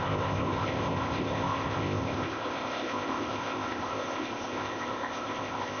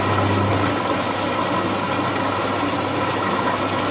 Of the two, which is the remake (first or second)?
first